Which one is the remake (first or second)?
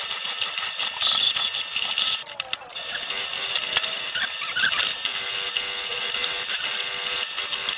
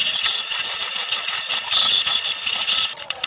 second